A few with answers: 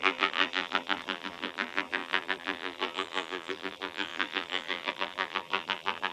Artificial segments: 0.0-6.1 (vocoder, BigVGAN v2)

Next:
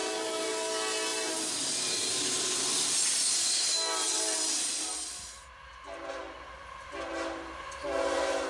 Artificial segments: 0.0-0.5 (vocoder, BigVGAN v2); 1.1-1.6; 4.1-4.9

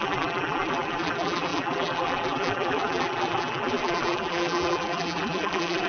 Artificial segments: 0.0-5.9 (vocoder, BigVGAN v2)

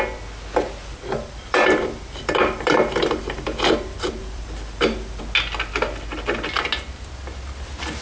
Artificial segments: 0.8-5.2 (vocoder, BigVGAN v2)

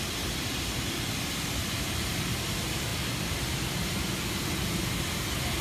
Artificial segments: 2.9-4.8 (vocoder, BigVGAN v2)

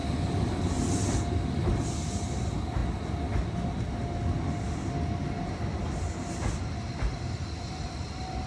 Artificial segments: none